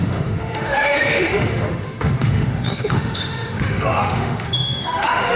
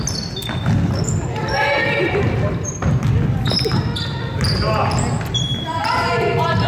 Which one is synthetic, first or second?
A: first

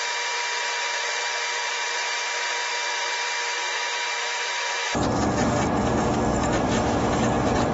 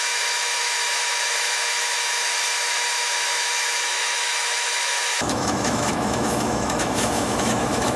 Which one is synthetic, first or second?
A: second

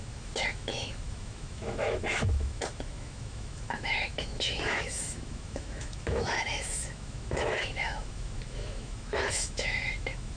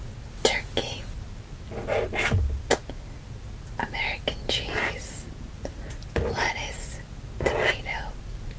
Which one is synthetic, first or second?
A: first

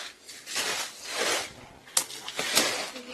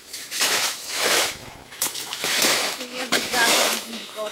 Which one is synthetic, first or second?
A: second